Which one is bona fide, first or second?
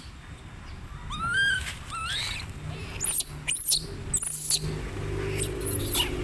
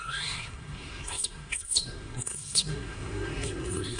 first